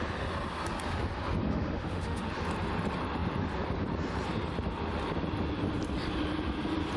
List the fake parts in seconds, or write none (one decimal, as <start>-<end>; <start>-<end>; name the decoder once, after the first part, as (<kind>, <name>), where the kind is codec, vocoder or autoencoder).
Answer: 1.4-2.3 (autoencoder, DAC-VAE)